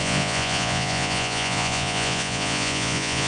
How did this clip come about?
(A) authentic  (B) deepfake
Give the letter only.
B